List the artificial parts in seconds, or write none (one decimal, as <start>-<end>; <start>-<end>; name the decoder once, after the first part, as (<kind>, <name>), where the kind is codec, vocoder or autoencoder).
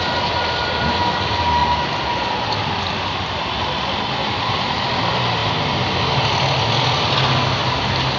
none